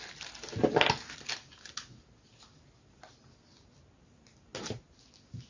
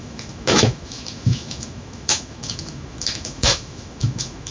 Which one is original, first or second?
first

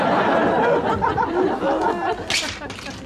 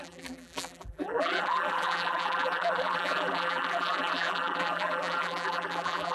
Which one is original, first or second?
first